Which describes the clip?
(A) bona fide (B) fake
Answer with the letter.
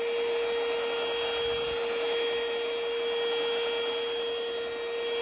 A